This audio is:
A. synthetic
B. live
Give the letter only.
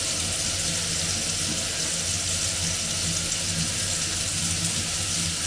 B